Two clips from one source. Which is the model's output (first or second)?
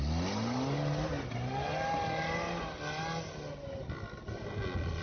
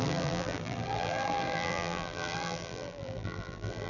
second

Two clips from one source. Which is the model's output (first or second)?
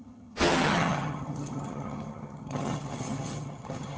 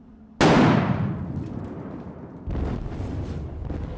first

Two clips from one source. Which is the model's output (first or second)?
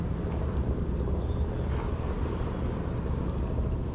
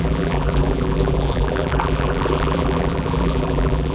second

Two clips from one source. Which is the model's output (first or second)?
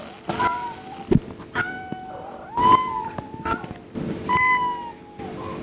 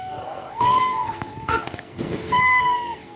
second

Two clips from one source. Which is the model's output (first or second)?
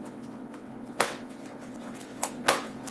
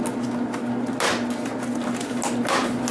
first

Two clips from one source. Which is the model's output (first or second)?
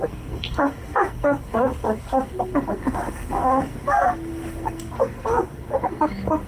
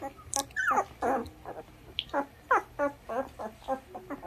first